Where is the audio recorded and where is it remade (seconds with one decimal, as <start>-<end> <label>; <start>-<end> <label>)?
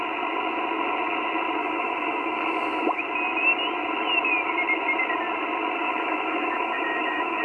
0.0-1.6 recorded; 1.6-3.0 remade; 3.0-5.8 recorded; 5.8-7.4 remade